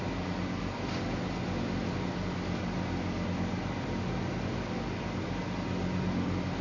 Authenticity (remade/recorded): recorded